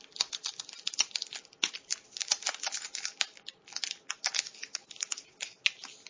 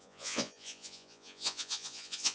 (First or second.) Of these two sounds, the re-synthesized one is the second